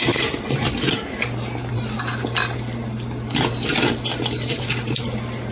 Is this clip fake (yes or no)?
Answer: no